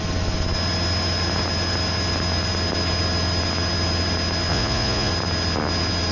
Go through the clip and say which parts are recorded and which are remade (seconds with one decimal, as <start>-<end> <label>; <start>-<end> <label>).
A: 0.0-4.5 recorded; 4.5-5.1 remade; 5.1-6.1 recorded

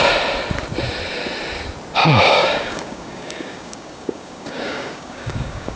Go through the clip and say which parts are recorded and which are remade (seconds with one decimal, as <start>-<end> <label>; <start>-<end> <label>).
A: 0.0-2.0 recorded; 2.0-5.8 remade

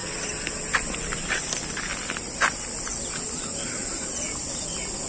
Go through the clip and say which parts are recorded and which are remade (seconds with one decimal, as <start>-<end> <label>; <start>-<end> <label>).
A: 0.0-3.1 recorded; 3.1-5.1 remade

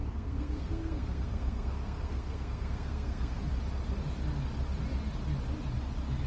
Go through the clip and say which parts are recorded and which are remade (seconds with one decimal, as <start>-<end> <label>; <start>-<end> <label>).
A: 0.0-3.4 remade; 3.4-6.3 recorded

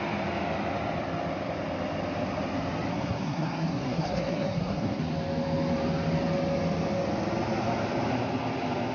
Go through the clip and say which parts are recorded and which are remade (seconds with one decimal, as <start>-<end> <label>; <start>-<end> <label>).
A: 0.0-2.9 recorded; 2.9-5.0 remade; 5.0-8.9 recorded

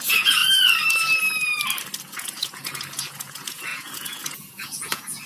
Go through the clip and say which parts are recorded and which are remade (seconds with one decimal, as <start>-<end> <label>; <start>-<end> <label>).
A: 0.0-0.4 remade; 0.4-2.0 recorded; 2.0-5.3 remade

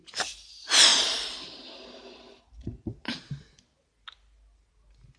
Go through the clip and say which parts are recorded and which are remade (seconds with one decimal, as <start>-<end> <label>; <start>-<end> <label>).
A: 0.0-5.2 recorded